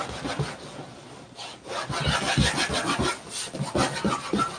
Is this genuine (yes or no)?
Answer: yes